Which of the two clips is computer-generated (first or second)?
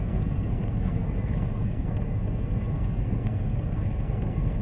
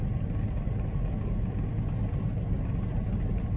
first